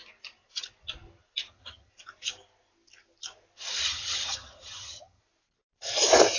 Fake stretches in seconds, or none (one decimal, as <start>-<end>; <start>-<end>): 1.5-1.9; 3.8-5.2